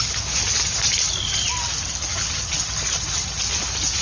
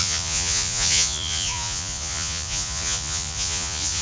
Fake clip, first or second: second